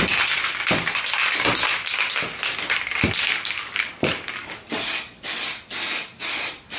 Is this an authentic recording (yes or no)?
yes